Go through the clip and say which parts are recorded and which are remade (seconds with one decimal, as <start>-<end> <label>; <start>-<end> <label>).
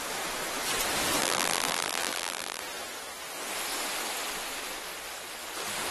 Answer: 0.0-1.2 recorded; 1.2-2.6 remade; 2.6-5.9 recorded